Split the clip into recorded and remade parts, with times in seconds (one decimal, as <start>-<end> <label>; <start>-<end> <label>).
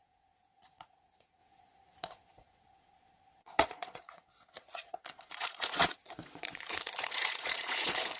0.0-8.2 remade